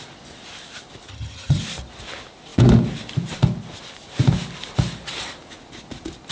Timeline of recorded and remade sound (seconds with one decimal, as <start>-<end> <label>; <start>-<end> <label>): 0.0-1.1 recorded; 1.1-1.6 remade; 1.6-6.3 recorded